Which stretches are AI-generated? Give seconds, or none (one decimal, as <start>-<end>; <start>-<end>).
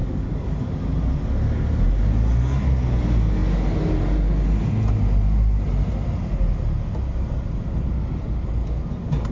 0.0-0.7